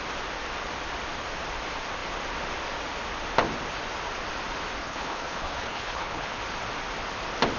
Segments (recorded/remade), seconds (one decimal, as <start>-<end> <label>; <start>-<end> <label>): 0.0-4.8 recorded; 4.8-6.4 remade; 6.4-7.6 recorded